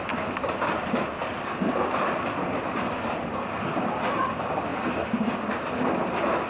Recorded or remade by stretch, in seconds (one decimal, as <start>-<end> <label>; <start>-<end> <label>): 0.0-6.5 recorded